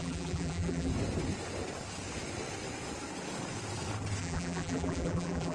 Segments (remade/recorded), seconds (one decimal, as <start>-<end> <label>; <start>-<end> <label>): 0.0-0.9 remade; 0.9-4.2 recorded; 4.2-5.5 remade